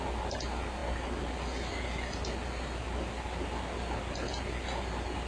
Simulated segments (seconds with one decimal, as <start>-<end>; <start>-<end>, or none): none